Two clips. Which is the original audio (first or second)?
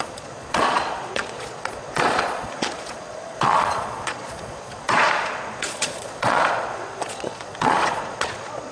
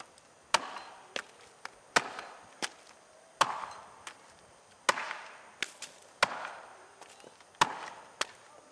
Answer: second